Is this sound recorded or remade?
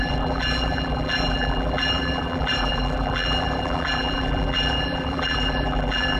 remade